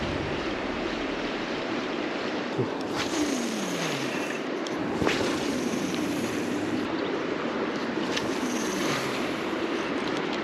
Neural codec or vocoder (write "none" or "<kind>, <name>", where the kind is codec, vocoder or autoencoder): vocoder, BigVGAN v2